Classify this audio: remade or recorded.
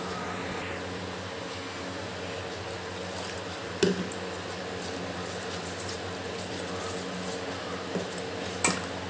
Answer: recorded